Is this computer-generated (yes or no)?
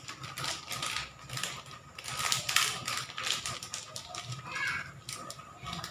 no